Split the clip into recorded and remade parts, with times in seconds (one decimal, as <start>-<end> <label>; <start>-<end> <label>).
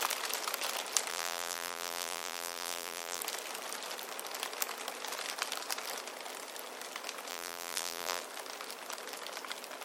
0.0-1.1 recorded; 1.1-3.2 remade; 3.2-7.3 recorded; 7.3-8.2 remade; 8.2-9.8 recorded